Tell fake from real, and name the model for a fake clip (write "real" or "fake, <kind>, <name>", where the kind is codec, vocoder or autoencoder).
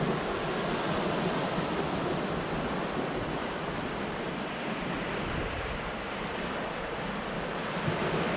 real